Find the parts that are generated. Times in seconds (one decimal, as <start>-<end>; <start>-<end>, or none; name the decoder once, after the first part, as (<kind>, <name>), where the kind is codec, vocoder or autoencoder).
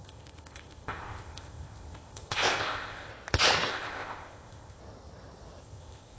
0.0-3.1 (codec, ZipCodec); 3.7-4.8; 5.6-6.2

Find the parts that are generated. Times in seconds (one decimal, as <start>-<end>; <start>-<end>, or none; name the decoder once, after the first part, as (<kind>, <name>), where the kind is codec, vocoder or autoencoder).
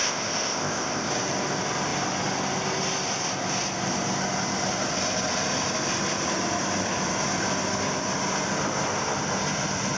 0.0-1.1 (codec, ZipCodec)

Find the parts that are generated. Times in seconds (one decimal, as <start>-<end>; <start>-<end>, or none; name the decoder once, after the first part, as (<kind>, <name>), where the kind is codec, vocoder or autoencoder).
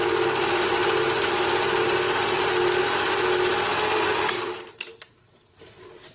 none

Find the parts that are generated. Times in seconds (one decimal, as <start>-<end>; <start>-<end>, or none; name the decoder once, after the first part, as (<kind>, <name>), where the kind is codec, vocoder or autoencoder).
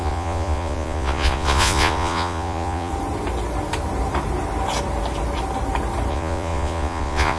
0.0-2.9 (vocoder, Vocos); 6.1-7.4